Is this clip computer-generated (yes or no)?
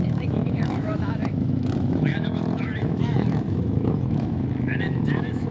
yes